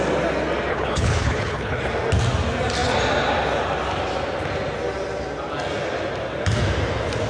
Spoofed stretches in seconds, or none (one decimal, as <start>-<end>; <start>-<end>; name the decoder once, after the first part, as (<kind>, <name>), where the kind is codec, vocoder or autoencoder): 0.7-1.8 (codec, HILCodec)